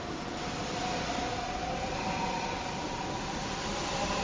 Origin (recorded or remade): recorded